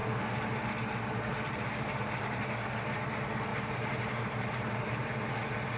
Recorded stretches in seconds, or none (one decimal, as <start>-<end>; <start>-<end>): 0.0-1.3; 2.4-3.5; 5.1-5.8